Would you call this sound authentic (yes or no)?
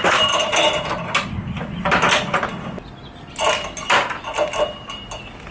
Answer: yes